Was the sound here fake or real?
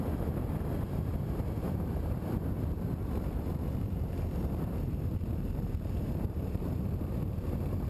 fake